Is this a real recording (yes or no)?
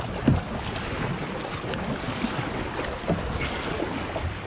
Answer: yes